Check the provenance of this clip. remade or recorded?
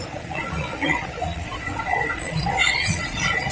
remade